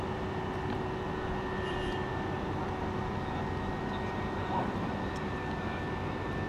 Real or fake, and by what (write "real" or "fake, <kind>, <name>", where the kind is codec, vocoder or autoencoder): real